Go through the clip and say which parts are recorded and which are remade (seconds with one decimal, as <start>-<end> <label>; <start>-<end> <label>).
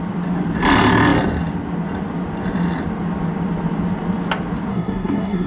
0.0-4.7 recorded; 4.7-5.5 remade